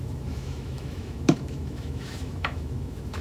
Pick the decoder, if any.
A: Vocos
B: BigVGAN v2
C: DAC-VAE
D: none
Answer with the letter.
C